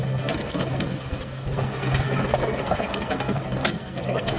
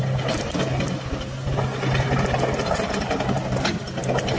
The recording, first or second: second